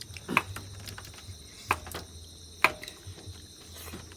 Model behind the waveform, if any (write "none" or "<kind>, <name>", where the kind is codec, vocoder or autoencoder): none